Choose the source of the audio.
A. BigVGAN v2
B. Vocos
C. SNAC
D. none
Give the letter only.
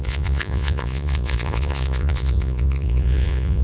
B